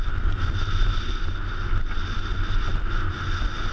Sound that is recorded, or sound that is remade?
recorded